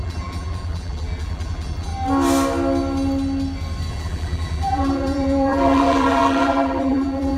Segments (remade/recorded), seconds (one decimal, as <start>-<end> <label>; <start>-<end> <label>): 0.0-1.9 remade; 1.9-3.9 recorded; 3.9-7.4 remade